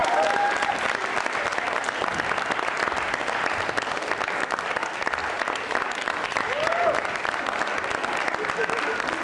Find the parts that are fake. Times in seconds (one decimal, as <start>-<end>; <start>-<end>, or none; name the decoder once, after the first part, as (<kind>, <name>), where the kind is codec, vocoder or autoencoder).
5.2-7.1 (vocoder, BigVGAN v2)